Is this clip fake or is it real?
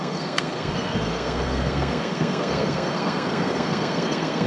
fake